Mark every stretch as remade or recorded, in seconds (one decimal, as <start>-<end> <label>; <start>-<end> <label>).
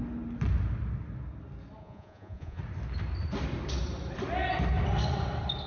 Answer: 0.0-1.8 recorded; 1.8-2.6 remade; 2.6-5.7 recorded